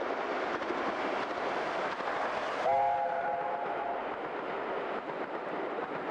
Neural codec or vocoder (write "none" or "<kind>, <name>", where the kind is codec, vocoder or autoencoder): none